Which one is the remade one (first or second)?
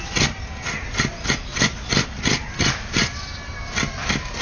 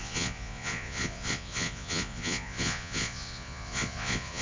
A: second